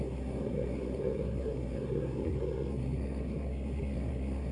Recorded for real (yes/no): no